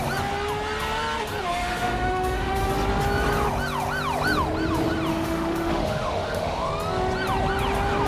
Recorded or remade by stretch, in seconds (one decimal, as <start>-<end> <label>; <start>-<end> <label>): 0.0-1.5 recorded; 1.5-2.7 remade; 2.7-5.1 recorded; 5.1-6.7 remade; 6.7-8.1 recorded